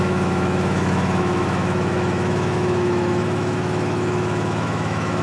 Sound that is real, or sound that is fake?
fake